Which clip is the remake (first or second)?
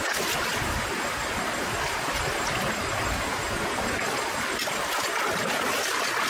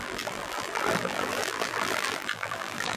second